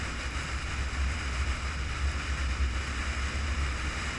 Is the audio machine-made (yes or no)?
no